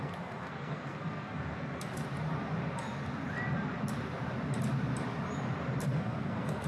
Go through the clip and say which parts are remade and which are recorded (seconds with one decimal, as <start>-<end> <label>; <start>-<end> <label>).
0.0-1.9 remade; 1.9-5.9 recorded; 5.9-6.7 remade